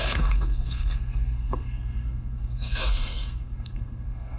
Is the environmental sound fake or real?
fake